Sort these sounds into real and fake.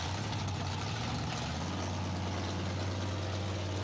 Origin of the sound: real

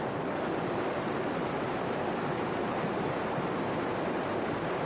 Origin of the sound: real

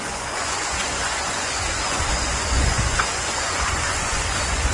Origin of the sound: fake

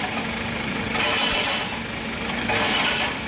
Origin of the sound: real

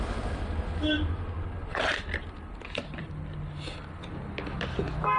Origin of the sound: real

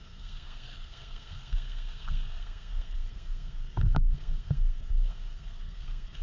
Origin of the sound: fake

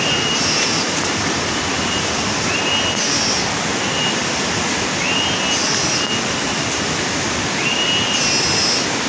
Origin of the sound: real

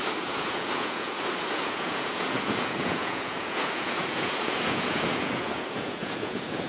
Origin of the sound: fake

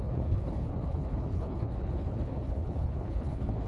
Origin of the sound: fake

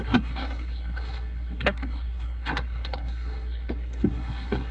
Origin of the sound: fake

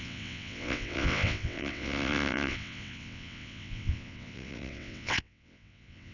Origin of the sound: fake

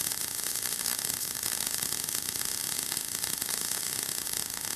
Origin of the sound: fake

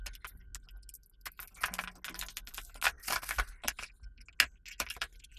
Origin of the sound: real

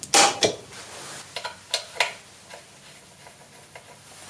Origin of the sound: real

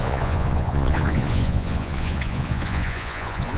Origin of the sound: fake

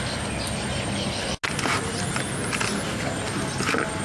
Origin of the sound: real